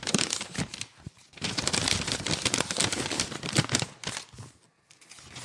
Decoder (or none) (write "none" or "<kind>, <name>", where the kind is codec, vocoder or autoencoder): none